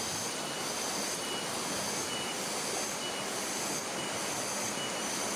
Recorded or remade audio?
recorded